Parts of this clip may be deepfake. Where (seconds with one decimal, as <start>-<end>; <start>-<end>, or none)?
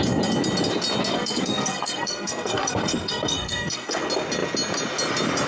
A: 1.1-4.0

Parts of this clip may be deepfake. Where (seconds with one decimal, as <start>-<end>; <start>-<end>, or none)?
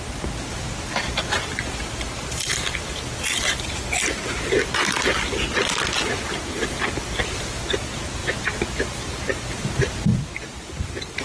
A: 8.2-9.2; 10.1-11.2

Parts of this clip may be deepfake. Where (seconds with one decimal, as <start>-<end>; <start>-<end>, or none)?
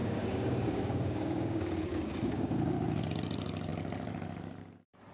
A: 0.0-3.1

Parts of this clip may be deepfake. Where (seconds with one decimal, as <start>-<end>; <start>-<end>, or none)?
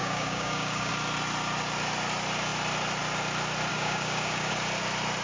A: 0.0-0.9; 3.7-4.5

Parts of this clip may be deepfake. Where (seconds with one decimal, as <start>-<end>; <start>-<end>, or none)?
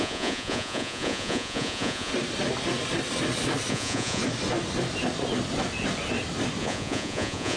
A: 0.0-2.1; 3.7-4.2; 6.6-7.6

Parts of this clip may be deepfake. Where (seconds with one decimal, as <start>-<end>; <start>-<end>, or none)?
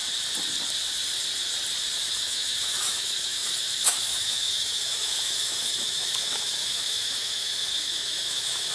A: 2.1-8.7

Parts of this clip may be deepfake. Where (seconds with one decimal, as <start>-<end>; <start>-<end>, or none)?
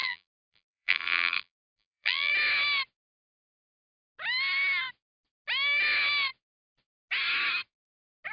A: 0.0-2.3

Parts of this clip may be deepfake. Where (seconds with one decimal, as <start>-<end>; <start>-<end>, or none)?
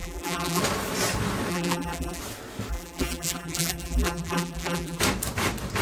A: 0.0-0.6; 1.5-2.2; 2.7-5.0